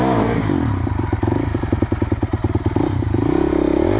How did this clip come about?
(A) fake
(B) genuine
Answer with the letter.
B